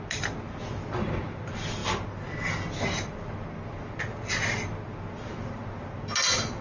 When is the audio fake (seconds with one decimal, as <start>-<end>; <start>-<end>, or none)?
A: none